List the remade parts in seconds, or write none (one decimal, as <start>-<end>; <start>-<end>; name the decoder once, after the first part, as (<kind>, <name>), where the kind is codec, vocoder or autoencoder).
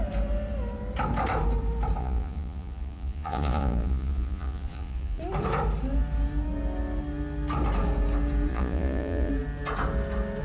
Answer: 2.0-5.2 (vocoder, Vocos); 8.5-9.3